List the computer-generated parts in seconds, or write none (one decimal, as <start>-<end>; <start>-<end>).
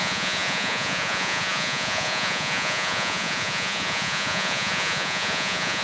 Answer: 0.0-5.8